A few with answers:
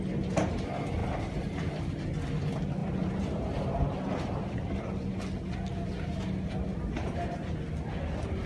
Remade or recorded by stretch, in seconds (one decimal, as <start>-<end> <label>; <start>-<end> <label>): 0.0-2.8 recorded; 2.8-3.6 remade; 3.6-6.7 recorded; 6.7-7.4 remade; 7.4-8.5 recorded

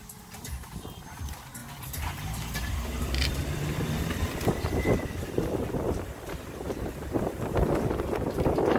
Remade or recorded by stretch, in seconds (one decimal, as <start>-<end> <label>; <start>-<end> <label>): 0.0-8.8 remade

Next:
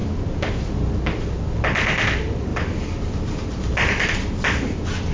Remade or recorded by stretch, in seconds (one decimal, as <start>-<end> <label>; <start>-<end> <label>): 0.0-0.9 remade; 0.9-2.5 recorded; 2.5-4.1 remade; 4.1-5.1 recorded

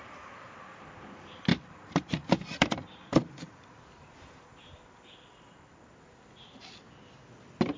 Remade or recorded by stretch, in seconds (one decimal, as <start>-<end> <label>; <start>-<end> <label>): 0.0-1.5 recorded; 1.5-4.8 remade; 4.8-7.8 recorded

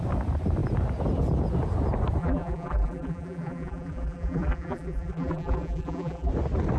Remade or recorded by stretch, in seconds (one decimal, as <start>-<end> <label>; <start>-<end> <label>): 0.0-2.2 recorded; 2.2-6.3 remade; 6.3-6.8 recorded

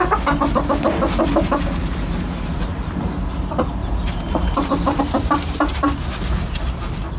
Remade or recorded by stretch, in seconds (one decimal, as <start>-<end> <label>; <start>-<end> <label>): 0.0-3.8 recorded; 3.8-5.0 remade; 5.0-7.2 recorded

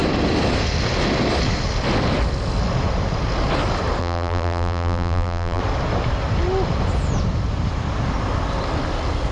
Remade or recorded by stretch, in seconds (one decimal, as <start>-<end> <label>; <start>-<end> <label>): 0.0-4.0 recorded; 4.0-5.6 remade; 5.6-9.3 recorded

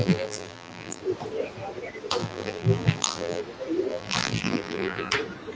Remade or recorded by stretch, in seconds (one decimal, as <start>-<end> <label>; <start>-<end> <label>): 0.0-1.0 remade; 1.0-2.2 recorded; 2.2-3.4 remade; 3.4-3.9 recorded; 3.9-5.1 remade; 5.1-5.6 recorded